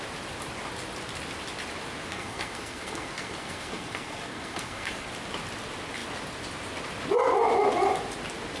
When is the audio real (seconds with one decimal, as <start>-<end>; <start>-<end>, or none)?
0.0-2.1; 5.1-8.6